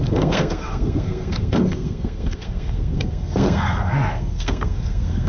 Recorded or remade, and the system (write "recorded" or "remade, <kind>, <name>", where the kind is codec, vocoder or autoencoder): remade, codec, SNAC